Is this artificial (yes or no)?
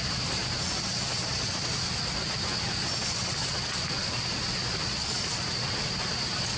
no